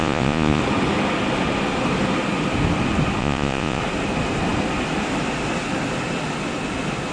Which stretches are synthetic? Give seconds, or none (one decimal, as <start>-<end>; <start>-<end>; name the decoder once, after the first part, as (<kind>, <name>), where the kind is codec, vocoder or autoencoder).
0.0-0.6 (vocoder, Vocos); 3.2-3.8